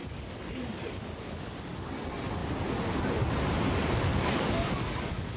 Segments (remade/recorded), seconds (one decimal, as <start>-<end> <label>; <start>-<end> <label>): 0.0-1.9 remade; 1.9-3.8 recorded; 3.8-5.4 remade